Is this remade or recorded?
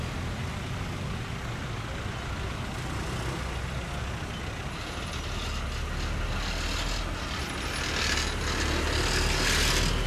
recorded